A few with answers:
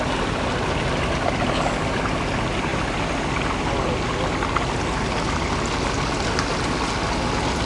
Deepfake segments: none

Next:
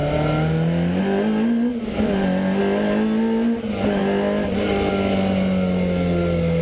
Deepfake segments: none

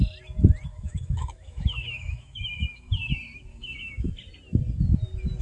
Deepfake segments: 0.7-2.9 (autoencoder, DAC-VAE); 3.5-4.1

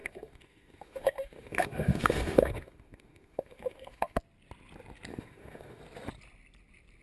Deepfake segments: 0.0-4.2 (autoencoder, DAC-VAE); 5.1-5.8

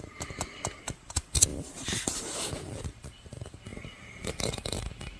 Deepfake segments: 1.5-2.5 (vocoder, BigVGAN v2); 3.7-4.3

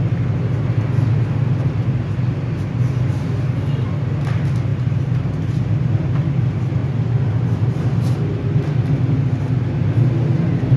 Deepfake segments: 4.7-5.5 (vocoder, BigVGAN v2); 6.8-7.8